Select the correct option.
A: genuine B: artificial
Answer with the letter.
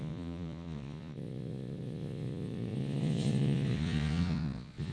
B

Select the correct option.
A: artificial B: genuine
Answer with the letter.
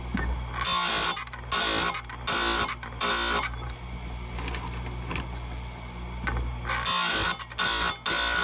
B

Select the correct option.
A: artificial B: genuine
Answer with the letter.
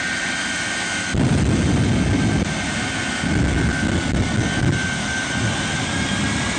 B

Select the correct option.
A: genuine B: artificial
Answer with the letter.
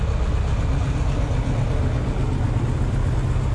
A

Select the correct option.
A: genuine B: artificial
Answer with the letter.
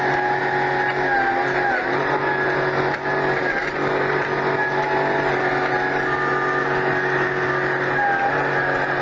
A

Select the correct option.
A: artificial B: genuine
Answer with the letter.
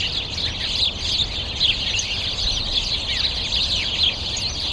B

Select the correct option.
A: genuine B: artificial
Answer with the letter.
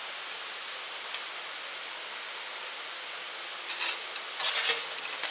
A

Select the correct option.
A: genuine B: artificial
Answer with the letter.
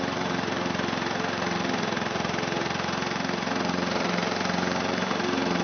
B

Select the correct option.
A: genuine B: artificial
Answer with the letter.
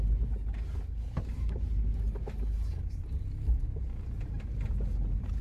A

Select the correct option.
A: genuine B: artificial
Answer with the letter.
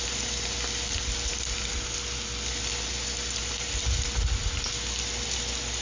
A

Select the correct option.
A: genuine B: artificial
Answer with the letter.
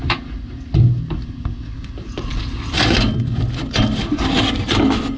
A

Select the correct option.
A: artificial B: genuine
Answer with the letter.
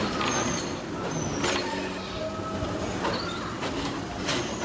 B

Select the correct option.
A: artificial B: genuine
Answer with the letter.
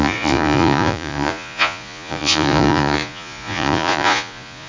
A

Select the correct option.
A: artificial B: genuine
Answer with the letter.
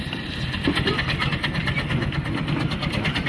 B